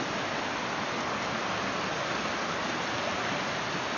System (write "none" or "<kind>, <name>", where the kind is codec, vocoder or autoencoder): none